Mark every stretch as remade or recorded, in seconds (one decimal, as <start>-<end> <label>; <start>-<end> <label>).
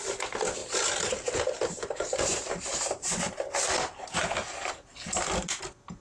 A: 0.0-6.0 recorded